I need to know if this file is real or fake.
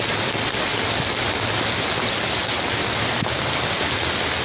real